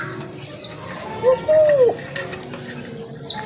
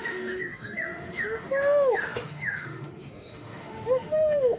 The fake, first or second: second